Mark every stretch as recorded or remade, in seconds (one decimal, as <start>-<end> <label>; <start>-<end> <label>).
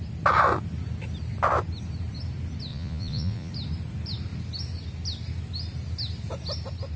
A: 0.0-2.7 recorded; 2.7-3.5 remade; 3.5-7.0 recorded